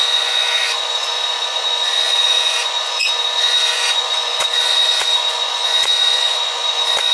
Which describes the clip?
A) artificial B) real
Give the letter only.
A